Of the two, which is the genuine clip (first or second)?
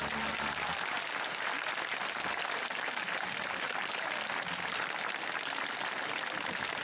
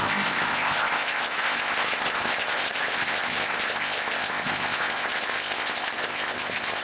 first